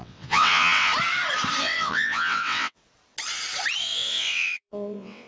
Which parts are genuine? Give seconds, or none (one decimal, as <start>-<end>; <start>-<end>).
0.9-1.6; 2.8-3.8